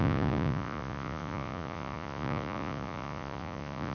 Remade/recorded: remade